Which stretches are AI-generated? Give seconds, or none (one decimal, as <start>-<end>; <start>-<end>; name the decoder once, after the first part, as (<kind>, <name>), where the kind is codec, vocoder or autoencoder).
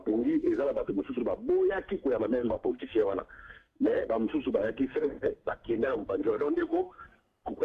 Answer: 0.0-1.2 (codec, SNAC); 2.2-7.0